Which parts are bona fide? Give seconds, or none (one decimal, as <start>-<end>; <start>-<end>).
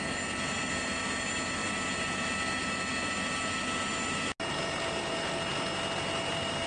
0.0-6.7